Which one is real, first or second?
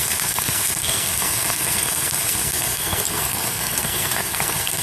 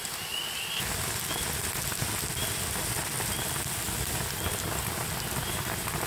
second